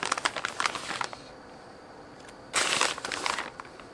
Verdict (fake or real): real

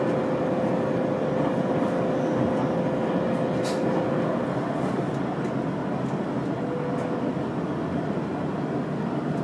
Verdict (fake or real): real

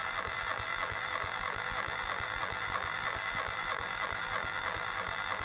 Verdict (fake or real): fake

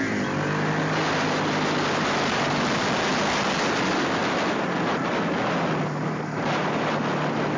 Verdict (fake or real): real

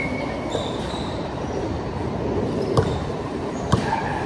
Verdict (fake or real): fake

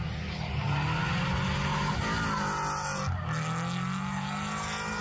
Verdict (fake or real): real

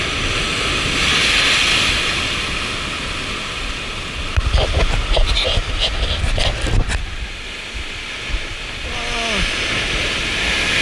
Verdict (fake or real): real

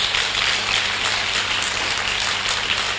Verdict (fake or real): real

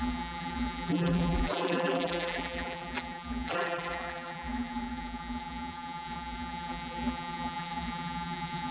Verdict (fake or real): fake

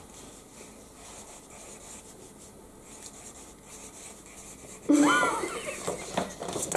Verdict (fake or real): real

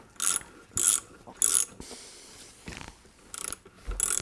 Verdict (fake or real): real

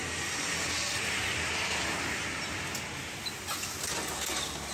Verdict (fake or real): real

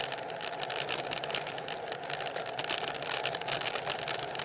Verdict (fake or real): real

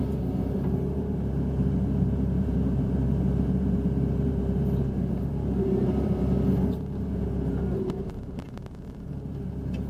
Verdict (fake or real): fake